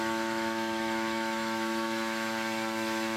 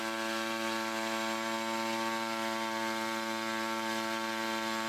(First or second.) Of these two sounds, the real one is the second